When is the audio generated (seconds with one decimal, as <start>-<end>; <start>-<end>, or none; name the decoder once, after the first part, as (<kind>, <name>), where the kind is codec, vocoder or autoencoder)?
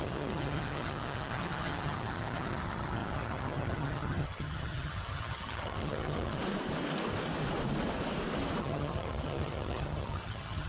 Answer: 0.0-6.4 (vocoder, HiFi-GAN); 8.6-10.7